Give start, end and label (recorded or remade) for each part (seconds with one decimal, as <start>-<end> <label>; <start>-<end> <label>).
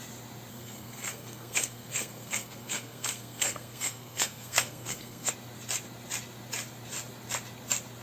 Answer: 0.0-0.5 recorded; 0.5-5.3 remade; 5.3-8.0 recorded